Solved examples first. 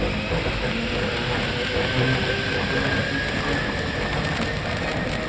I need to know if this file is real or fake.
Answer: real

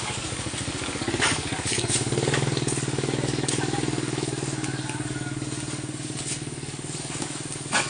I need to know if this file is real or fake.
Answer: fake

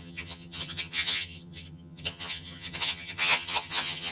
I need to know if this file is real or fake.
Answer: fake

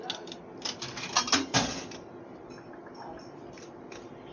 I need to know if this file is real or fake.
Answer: real